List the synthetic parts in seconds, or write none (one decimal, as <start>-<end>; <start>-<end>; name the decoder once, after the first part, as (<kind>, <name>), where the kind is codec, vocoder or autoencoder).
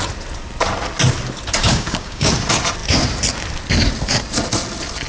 1.6-2.3 (codec, DAC)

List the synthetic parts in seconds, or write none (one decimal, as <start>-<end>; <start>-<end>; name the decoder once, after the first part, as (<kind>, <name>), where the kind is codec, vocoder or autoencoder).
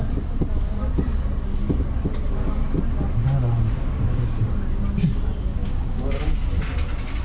5.6-6.2 (codec, DAC)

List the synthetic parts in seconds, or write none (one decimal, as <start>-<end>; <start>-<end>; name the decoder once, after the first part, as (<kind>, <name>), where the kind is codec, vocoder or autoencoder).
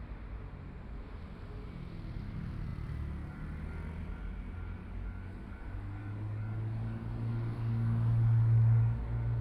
4.8-5.6 (codec, DAC); 6.0-9.0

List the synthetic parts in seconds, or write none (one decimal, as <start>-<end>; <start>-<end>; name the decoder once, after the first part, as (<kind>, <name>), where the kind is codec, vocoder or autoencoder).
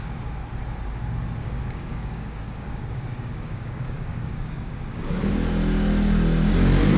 1.4-5.3 (codec, DAC)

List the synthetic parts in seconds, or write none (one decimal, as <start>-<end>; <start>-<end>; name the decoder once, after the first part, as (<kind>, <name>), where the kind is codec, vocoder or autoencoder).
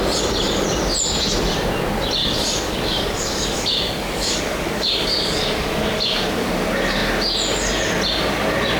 2.2-6.5 (codec, DAC)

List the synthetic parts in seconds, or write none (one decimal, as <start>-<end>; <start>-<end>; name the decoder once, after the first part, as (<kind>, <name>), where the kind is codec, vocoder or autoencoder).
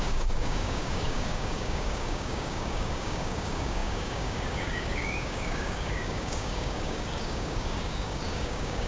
0.0-8.9 (codec, DAC)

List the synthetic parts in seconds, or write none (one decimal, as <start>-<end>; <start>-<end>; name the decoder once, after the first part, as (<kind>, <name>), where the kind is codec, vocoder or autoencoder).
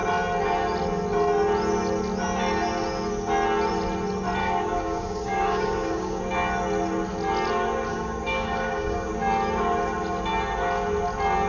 4.4-6.2 (codec, DAC); 7.9-9.1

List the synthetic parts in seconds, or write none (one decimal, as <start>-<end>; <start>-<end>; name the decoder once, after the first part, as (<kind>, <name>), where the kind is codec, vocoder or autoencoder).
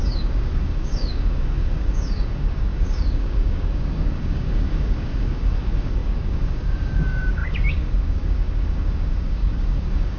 0.0-10.2 (codec, DAC)